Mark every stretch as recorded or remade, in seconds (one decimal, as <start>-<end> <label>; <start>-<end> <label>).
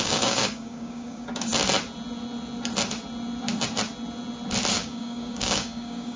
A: 0.0-1.5 remade; 1.5-4.7 recorded; 4.7-6.2 remade